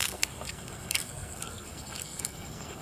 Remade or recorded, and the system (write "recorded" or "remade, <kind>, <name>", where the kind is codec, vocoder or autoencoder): remade, codec, SNAC